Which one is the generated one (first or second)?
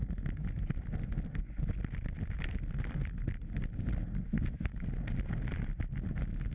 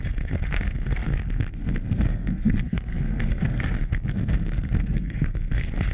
second